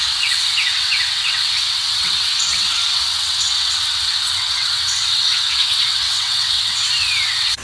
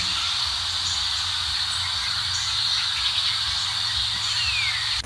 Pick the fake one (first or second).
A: first